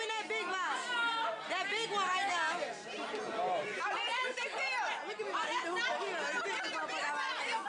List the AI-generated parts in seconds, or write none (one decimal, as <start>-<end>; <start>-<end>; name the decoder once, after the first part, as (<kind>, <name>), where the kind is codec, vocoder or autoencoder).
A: none